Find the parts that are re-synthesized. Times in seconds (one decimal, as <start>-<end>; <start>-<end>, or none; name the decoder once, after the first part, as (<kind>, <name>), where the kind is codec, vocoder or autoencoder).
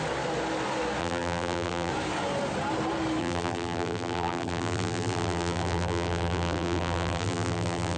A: 1.0-1.9 (vocoder, BigVGAN v2); 3.2-8.0